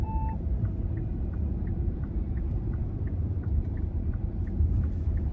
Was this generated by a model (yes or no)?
yes